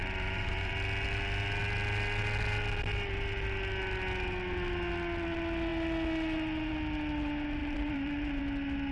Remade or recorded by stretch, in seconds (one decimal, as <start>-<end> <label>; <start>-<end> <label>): 0.0-0.7 remade; 0.7-7.6 recorded; 7.6-8.4 remade; 8.4-8.9 recorded